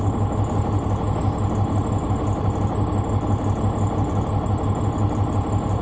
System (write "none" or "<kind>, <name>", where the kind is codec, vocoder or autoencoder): none